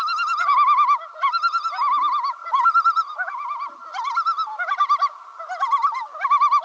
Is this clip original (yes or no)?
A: yes